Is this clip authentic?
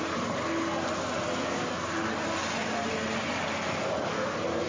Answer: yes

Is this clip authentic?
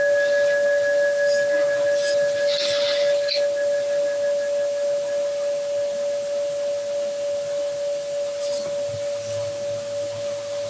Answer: yes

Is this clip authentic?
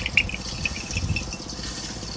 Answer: yes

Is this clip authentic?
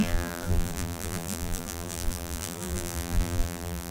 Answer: no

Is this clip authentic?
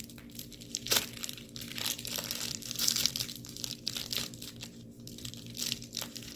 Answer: no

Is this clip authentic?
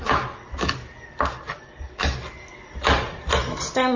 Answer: yes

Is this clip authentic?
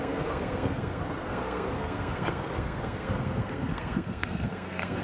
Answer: no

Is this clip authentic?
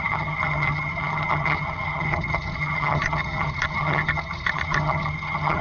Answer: no